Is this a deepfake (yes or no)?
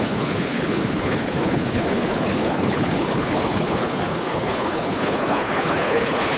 yes